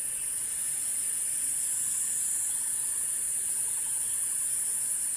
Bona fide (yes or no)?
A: no